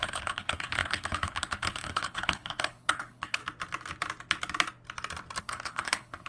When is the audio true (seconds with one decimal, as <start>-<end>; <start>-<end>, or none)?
3.4-5.4